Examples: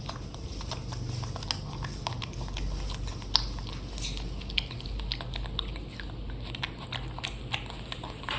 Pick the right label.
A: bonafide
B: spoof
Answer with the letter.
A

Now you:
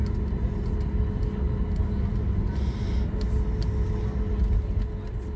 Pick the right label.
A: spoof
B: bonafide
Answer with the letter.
B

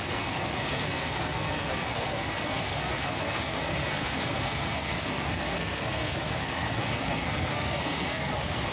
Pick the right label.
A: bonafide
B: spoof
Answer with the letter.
B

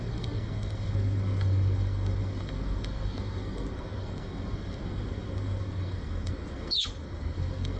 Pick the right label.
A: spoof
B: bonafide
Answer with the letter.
A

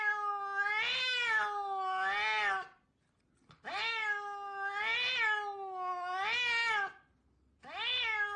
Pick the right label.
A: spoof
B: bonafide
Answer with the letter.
B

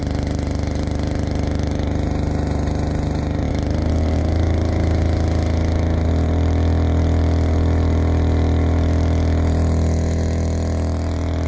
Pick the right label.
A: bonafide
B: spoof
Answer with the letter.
A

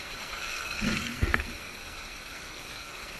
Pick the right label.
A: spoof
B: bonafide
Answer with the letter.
A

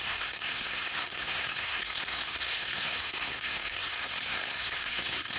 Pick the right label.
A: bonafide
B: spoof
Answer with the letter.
B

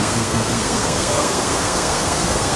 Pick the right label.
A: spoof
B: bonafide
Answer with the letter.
A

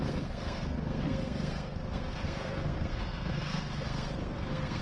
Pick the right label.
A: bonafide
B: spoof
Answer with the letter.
B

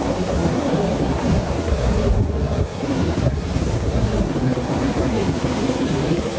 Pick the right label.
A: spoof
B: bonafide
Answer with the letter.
A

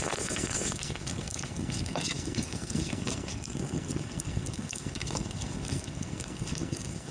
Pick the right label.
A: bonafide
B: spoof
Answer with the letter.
B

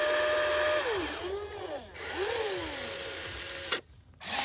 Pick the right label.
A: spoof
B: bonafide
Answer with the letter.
B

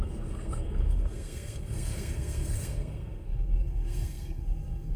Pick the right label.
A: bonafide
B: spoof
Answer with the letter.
B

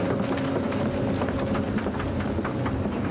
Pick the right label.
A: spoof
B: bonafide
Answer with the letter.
B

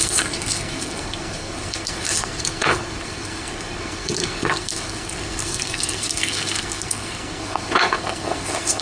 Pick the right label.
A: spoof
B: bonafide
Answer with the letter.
A